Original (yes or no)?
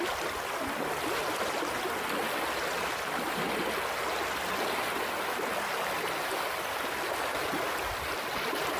yes